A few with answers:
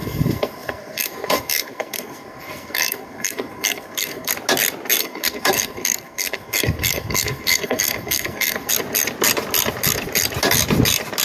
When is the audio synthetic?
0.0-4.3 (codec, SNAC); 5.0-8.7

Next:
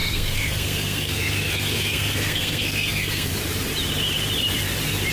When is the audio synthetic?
0.0-3.3 (codec, SNAC)

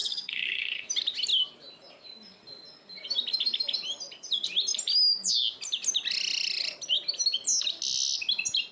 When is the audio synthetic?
0.0-0.9 (codec, SNAC)

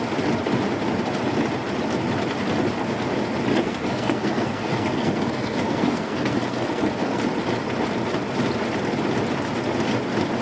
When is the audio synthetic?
3.5-7.2 (codec, SNAC)